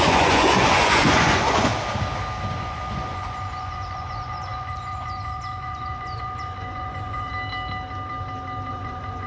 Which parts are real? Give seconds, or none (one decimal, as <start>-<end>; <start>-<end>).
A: 1.7-2.6; 7.3-8.7